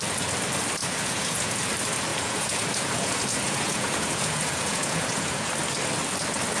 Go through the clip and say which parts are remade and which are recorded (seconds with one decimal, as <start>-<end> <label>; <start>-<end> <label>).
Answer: 0.0-0.8 recorded; 0.8-1.7 remade; 1.7-2.1 recorded; 2.1-5.5 remade; 5.5-6.6 recorded